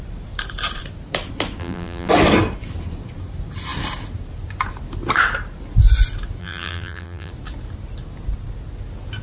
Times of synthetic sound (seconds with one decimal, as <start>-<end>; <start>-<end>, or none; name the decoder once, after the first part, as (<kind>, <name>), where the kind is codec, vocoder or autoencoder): 1.6-2.1 (vocoder, BigVGAN v2); 6.4-7.3